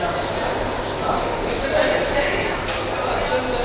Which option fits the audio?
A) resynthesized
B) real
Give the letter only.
B